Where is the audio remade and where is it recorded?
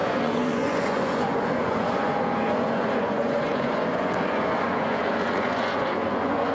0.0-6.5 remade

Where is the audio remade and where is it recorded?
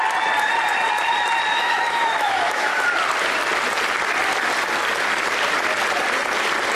0.0-1.5 recorded; 1.5-2.8 remade; 2.8-6.7 recorded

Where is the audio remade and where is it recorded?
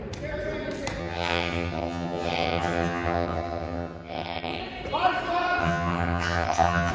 0.0-1.0 recorded; 1.0-4.6 remade; 4.6-5.6 recorded; 5.6-6.9 remade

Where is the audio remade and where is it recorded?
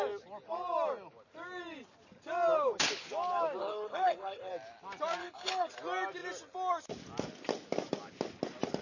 0.0-3.6 recorded; 3.6-4.5 remade; 4.5-5.2 recorded; 5.2-5.7 remade; 5.7-8.8 recorded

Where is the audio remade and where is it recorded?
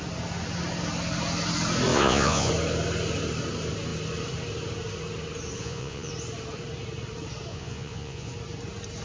0.0-1.9 recorded; 1.9-2.5 remade; 2.5-5.6 recorded; 5.6-6.1 remade; 6.1-7.5 recorded; 7.5-8.3 remade; 8.3-9.0 recorded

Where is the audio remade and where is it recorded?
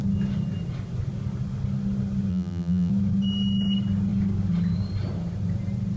0.0-2.3 recorded; 2.3-2.9 remade; 2.9-6.0 recorded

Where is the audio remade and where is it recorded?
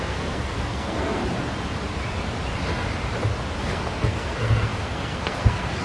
0.0-1.2 remade; 1.2-3.6 recorded; 3.6-5.8 remade